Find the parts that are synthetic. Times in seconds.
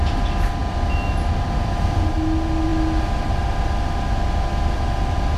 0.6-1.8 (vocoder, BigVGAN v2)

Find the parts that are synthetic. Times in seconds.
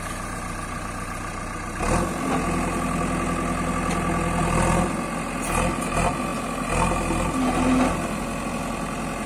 none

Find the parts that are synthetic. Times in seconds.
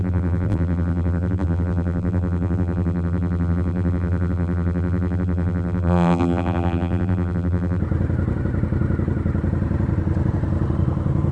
0.0-7.8 (vocoder, BigVGAN v2)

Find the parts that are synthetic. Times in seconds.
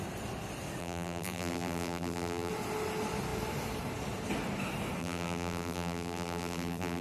0.8-2.5 (vocoder, BigVGAN v2); 5.0-7.0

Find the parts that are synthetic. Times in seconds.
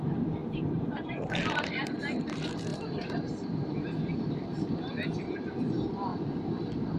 0.0-6.1 (vocoder, BigVGAN v2)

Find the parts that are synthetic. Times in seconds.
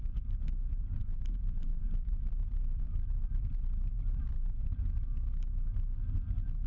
1.0-4.8 (vocoder, BigVGAN v2)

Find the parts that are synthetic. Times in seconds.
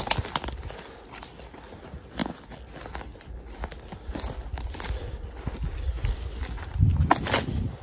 none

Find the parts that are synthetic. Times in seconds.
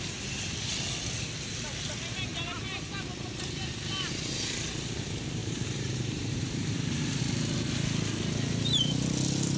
5.4-7.2 (vocoder, BigVGAN v2)